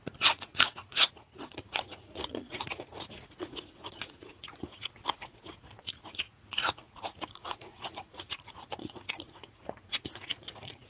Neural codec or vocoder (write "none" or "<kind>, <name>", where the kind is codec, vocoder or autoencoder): vocoder, Vocos